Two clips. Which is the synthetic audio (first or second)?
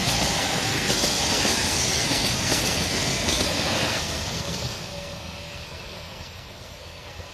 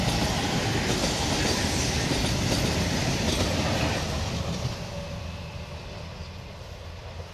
first